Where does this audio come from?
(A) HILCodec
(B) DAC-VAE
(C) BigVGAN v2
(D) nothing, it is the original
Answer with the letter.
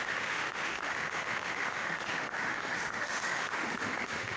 B